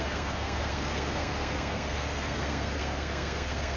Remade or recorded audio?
remade